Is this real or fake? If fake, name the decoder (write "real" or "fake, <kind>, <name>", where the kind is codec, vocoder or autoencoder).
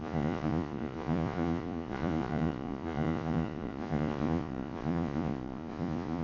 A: fake, vocoder, Vocos